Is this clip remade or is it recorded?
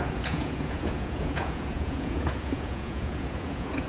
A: remade